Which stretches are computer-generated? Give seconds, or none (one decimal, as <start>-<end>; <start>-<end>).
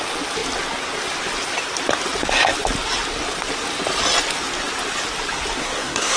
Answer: 5.6-6.2